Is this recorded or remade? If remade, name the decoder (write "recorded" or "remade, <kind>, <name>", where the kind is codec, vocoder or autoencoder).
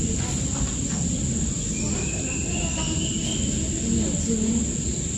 recorded